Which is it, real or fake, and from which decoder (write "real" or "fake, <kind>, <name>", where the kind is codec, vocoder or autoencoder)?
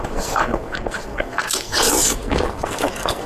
fake, codec, SNAC